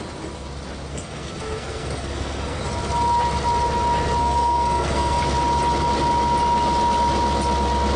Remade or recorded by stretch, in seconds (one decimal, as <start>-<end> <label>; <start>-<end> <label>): 0.0-0.9 recorded; 0.9-2.6 remade; 2.6-4.2 recorded; 4.2-5.2 remade; 5.2-8.0 recorded